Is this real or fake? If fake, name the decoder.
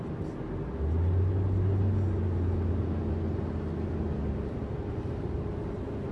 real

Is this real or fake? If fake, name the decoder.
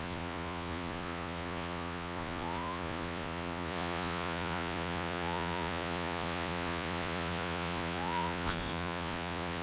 fake, vocoder, Vocos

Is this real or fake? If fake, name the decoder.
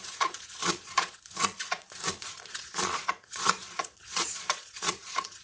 fake, vocoder, Vocos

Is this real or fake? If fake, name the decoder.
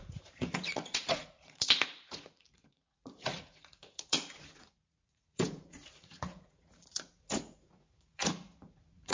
fake, vocoder, Vocos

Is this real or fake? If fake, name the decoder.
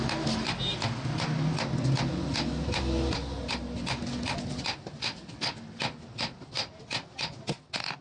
real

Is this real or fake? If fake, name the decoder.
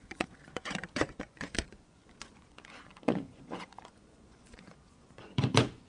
fake, vocoder, Vocos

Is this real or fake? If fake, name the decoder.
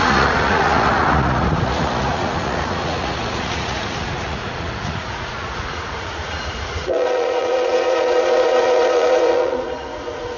fake, vocoder, Vocos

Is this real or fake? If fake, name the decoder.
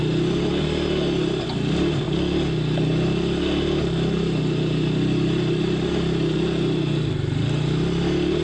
real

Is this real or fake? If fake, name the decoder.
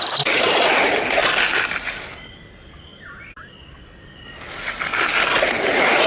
real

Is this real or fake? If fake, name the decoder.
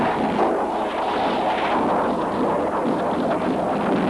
real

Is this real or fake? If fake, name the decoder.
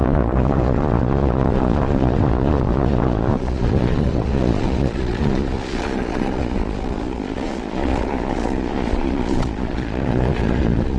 fake, vocoder, Vocos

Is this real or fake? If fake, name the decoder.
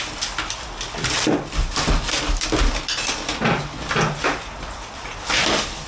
real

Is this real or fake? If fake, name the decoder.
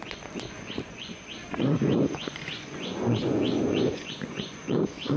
fake, vocoder, Vocos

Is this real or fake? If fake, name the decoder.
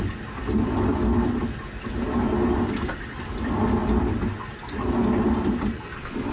real